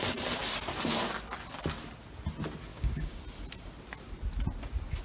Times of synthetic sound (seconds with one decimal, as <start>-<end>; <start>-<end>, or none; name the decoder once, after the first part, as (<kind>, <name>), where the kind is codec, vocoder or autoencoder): 2.7-3.2 (codec, DAC)